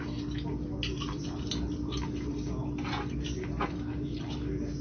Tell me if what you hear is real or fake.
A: real